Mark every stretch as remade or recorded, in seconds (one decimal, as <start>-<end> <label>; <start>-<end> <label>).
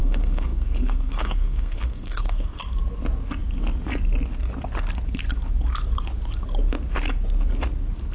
0.0-2.6 remade; 2.6-8.1 recorded